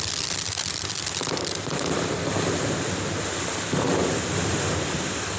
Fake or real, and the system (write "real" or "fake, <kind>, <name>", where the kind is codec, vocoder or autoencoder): real